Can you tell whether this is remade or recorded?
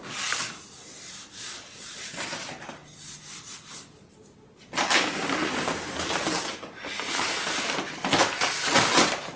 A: recorded